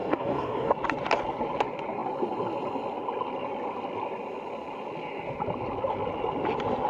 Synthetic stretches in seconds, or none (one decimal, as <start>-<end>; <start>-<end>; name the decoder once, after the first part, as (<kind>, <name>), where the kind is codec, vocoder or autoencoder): 0.0-0.7 (codec, DAC)